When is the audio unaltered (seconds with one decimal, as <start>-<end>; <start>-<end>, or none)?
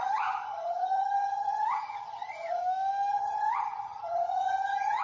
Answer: 2.6-3.1